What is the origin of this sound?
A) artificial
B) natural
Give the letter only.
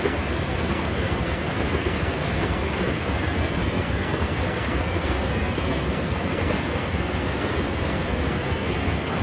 A